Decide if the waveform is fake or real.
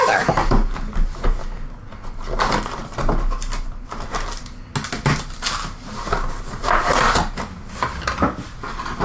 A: real